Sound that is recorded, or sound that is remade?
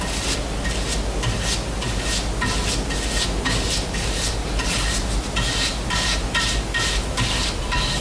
recorded